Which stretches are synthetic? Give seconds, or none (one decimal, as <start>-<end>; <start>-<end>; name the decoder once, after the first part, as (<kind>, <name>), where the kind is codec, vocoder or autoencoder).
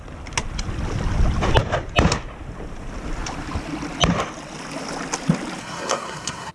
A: 5.6-6.5 (codec, SNAC)